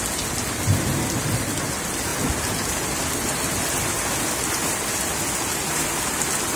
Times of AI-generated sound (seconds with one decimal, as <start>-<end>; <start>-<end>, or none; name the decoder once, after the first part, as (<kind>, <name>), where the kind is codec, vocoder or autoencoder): none